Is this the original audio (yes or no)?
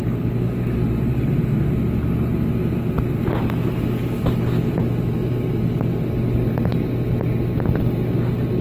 yes